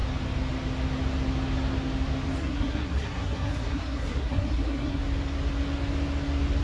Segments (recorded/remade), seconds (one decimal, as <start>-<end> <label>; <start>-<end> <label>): 0.0-2.4 recorded; 2.4-5.0 remade; 5.0-6.6 recorded